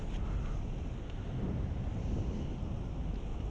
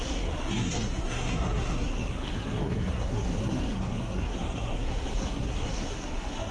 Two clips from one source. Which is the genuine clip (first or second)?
first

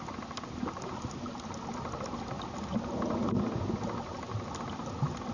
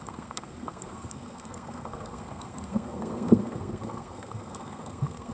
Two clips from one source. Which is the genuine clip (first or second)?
first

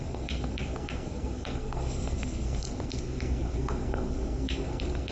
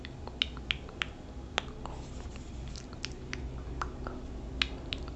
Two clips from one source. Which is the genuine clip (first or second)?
second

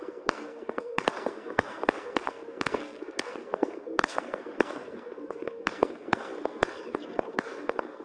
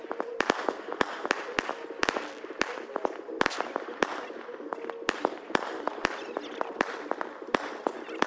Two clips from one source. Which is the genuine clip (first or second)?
second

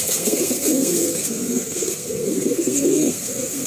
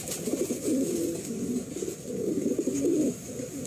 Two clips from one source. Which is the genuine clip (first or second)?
second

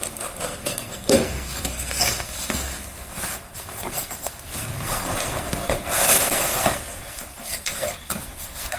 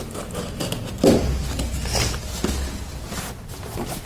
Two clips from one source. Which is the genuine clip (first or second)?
second